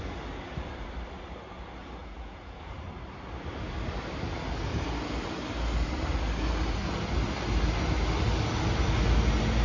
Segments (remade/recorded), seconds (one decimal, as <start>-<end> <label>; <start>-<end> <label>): 0.0-2.0 recorded; 2.0-2.6 remade; 2.6-9.6 recorded

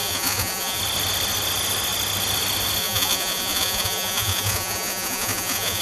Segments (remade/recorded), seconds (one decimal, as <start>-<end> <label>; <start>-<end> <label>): 0.0-0.8 remade; 0.8-2.8 recorded; 2.8-5.8 remade

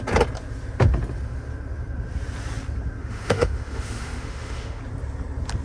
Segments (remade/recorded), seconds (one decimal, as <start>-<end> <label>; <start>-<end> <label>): 0.0-3.0 recorded; 3.0-4.8 remade; 4.8-5.6 recorded

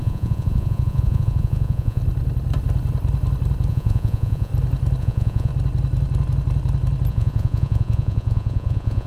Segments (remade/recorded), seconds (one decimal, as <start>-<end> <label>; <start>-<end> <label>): 0.0-2.0 remade; 2.0-3.7 recorded; 3.7-4.5 remade; 4.5-5.0 recorded; 5.0-5.5 remade; 5.5-7.1 recorded; 7.1-9.1 remade

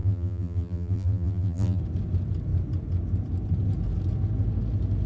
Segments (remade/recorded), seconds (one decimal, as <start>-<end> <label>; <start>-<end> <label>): 0.0-1.8 remade; 1.8-5.1 recorded